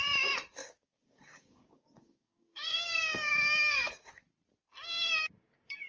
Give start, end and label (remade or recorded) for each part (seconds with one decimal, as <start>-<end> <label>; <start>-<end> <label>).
0.0-0.6 recorded; 0.6-4.1 remade; 4.1-5.2 recorded; 5.2-5.9 remade